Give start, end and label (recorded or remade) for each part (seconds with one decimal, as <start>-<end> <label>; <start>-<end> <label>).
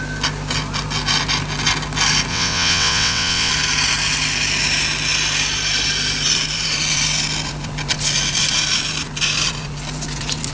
0.0-2.3 recorded; 2.3-3.5 remade; 3.5-10.5 recorded